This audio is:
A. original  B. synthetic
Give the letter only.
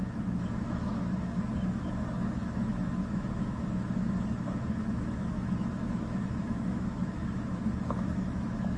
B